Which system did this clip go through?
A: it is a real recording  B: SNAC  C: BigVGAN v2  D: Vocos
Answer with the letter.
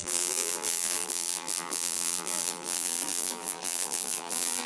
C